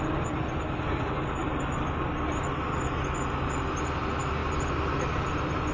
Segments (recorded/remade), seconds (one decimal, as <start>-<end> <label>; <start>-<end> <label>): 0.0-5.7 recorded